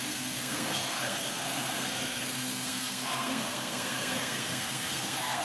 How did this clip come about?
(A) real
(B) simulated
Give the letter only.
B